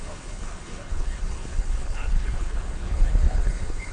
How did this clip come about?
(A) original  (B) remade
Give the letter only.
B